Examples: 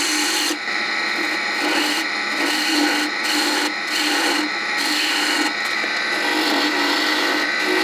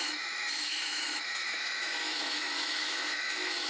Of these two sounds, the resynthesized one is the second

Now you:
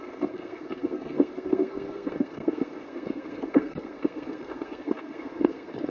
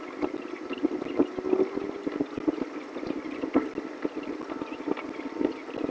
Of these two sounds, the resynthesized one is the first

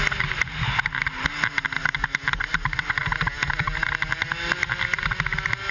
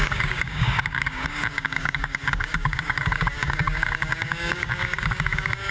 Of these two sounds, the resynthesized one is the second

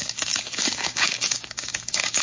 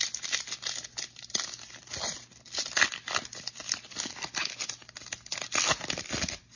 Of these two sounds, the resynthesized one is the first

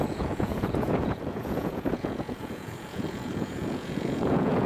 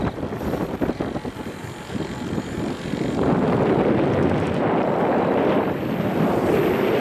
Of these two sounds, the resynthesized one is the first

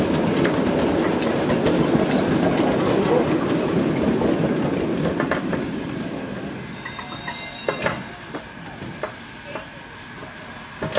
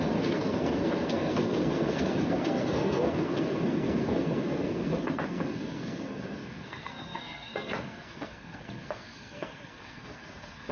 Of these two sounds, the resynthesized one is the second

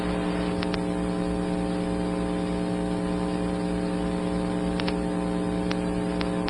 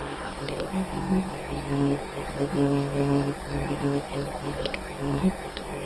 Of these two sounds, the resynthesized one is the second